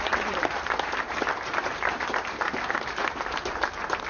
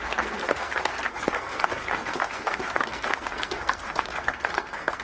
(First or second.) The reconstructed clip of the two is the second